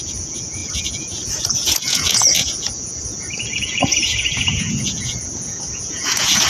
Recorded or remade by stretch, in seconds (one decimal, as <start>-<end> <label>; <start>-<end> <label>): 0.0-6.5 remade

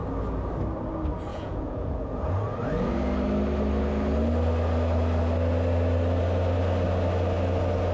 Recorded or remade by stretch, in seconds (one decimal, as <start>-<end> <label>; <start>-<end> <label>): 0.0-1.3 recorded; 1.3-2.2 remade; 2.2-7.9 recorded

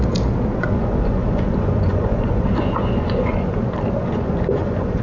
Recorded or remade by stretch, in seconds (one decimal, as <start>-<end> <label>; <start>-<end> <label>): 0.0-0.6 recorded; 0.6-3.6 remade; 3.6-4.0 recorded; 4.0-5.0 remade

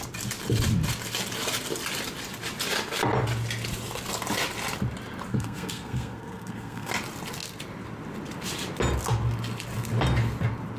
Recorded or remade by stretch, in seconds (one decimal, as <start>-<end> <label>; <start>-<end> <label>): 0.0-5.3 recorded; 5.3-6.9 remade; 6.9-10.8 recorded